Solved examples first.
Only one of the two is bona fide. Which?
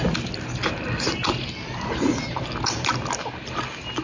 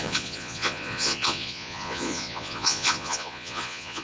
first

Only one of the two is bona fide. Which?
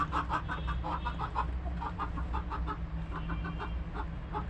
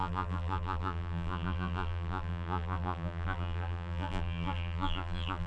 first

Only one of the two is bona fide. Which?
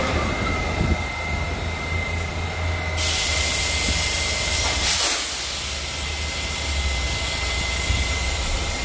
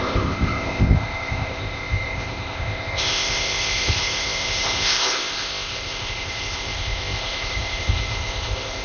first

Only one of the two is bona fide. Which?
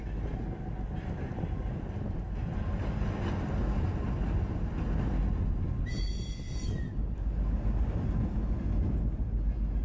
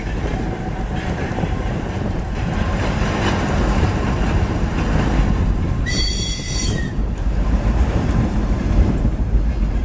first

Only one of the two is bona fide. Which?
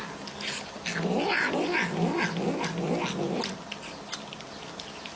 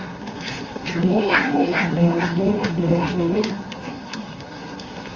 first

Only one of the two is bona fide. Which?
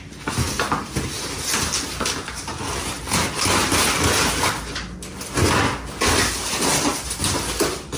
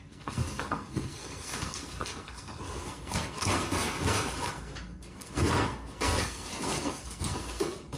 first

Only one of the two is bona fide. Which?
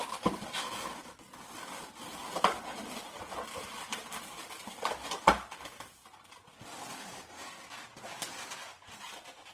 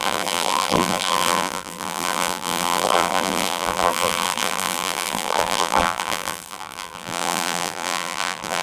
first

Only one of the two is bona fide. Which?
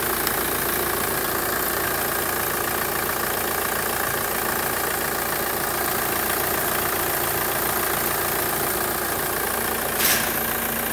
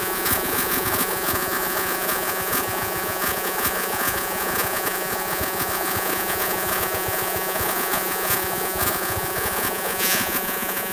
first